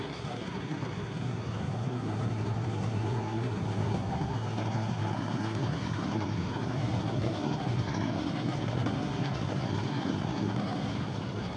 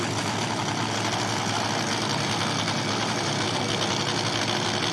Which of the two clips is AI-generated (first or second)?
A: first